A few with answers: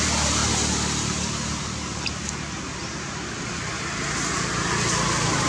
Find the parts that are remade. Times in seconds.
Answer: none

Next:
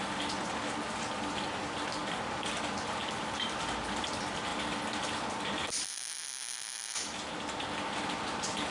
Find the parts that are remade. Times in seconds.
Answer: 3.0-3.6

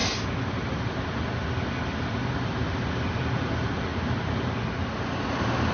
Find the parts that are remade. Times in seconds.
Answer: 1.7-3.9; 5.2-5.7